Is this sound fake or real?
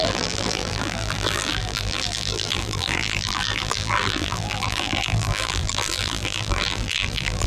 fake